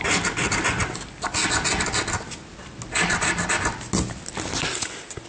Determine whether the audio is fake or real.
real